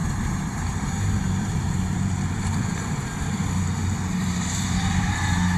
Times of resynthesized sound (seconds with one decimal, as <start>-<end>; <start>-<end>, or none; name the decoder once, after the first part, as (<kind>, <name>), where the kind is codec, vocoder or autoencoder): 0.0-2.9 (vocoder, BigVGAN v2); 4.2-5.6